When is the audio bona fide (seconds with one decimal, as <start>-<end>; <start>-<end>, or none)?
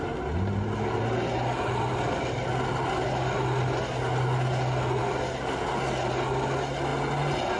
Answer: 0.0-7.6